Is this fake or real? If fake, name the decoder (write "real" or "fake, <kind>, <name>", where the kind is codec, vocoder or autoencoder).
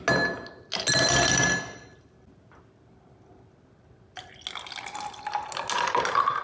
real